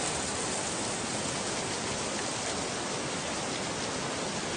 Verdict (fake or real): real